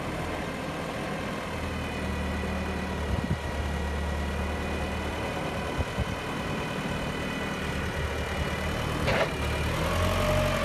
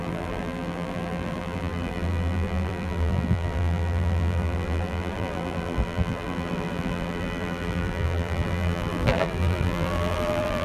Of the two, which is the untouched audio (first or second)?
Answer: first